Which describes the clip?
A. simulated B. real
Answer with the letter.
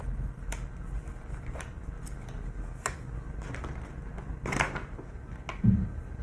B